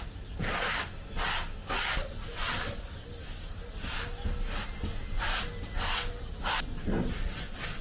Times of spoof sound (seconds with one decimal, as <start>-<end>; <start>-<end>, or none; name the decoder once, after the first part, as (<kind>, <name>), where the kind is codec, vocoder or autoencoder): none